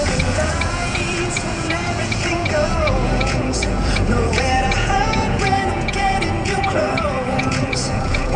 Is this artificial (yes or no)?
yes